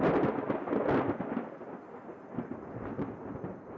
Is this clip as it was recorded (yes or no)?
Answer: yes